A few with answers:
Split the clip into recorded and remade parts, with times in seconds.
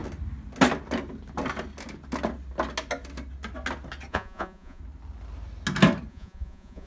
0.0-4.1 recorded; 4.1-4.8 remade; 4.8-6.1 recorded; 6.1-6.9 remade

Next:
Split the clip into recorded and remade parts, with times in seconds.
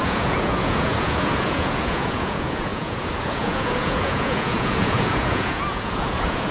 0.0-6.5 remade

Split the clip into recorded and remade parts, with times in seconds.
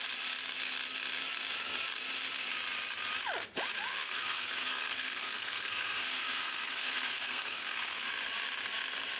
0.0-3.9 recorded; 3.9-8.1 remade; 8.1-9.2 recorded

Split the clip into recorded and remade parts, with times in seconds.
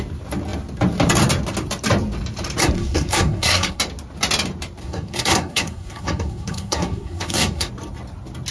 0.0-2.6 recorded; 2.6-3.8 remade; 3.8-4.8 recorded; 4.8-7.7 remade; 7.7-8.5 recorded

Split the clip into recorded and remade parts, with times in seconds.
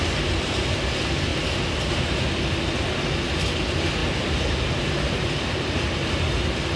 0.0-1.3 recorded; 1.3-2.0 remade; 2.0-4.0 recorded; 4.0-6.1 remade; 6.1-6.8 recorded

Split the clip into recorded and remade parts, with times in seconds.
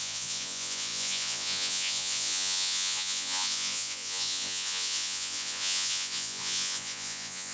0.0-7.5 remade